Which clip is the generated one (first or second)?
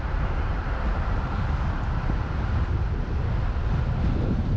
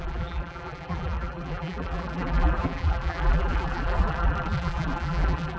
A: second